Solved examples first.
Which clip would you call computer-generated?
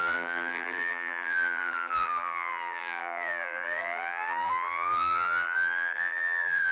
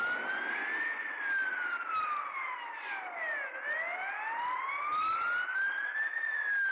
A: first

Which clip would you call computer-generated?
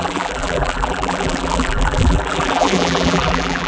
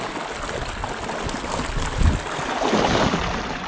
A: first